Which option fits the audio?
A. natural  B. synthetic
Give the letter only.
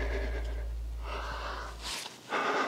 A